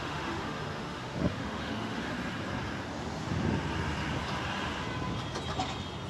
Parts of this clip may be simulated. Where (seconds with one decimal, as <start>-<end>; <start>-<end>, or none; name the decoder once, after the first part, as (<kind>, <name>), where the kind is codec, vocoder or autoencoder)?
0.0-2.1 (autoencoder, DAC-VAE)